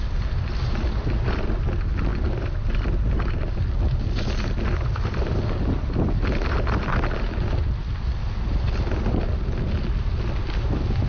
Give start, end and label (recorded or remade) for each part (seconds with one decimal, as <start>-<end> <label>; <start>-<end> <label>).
0.0-11.1 recorded